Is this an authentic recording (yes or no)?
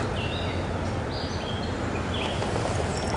yes